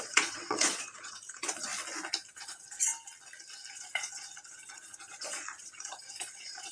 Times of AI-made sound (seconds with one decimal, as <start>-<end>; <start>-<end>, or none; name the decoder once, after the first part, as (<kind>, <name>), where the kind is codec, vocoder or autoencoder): 0.0-1.7 (vocoder, Vocos); 2.3-2.9; 3.7-6.7